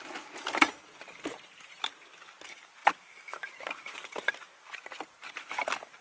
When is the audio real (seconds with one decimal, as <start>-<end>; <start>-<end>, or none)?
0.0-6.0